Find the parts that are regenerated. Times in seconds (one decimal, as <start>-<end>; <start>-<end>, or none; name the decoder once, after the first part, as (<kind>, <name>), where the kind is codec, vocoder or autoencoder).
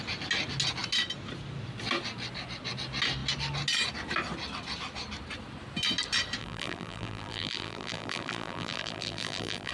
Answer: 6.4-9.7 (vocoder, BigVGAN v2)